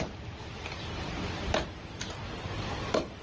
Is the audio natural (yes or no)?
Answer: yes